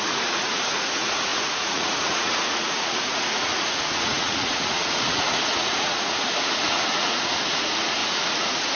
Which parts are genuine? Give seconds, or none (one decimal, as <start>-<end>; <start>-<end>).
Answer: none